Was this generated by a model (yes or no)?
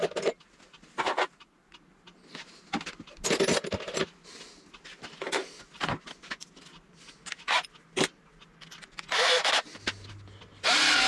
no